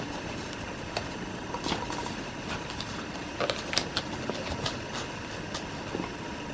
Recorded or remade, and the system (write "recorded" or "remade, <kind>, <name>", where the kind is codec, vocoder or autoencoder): recorded